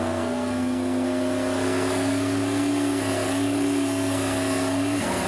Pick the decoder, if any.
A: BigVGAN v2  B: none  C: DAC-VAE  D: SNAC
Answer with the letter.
D